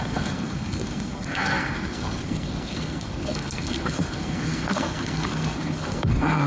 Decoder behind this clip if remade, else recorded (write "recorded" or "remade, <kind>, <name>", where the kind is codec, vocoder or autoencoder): remade, codec, SNAC